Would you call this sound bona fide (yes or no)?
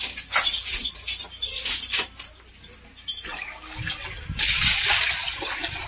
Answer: yes